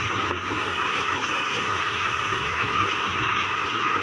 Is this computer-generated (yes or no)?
yes